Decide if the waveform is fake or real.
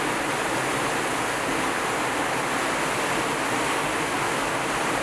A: real